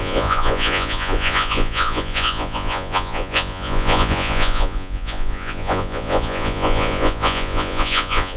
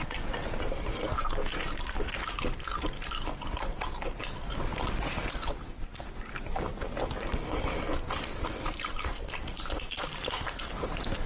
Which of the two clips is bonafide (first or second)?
second